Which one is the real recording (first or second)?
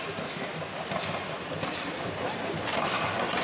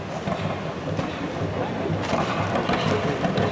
second